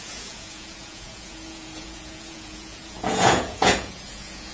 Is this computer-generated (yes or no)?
yes